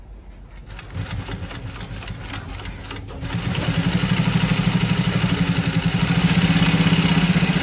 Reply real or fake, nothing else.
real